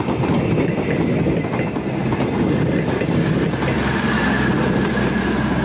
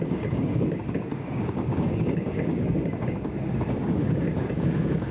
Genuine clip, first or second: first